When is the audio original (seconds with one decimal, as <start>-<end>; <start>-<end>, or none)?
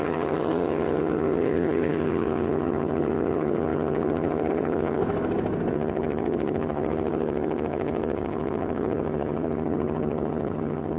5.0-5.7